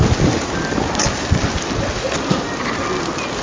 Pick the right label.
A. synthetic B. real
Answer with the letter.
A